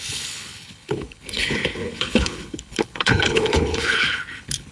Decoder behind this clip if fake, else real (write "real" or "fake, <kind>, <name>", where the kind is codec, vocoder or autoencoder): fake, codec, HILCodec